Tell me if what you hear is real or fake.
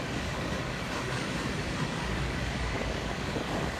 fake